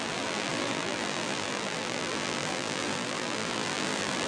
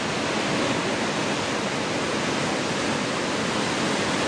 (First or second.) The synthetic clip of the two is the first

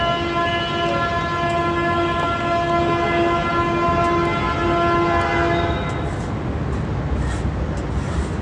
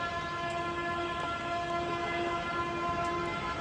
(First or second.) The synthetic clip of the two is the second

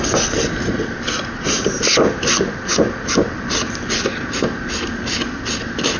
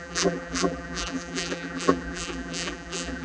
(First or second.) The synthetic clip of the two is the second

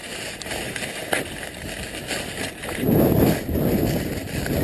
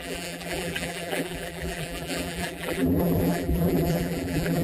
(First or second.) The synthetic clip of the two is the second